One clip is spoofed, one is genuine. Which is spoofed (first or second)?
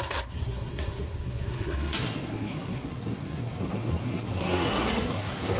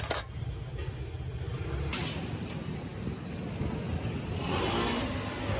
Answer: first